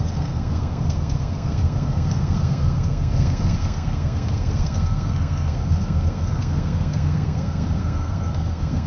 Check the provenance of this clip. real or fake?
fake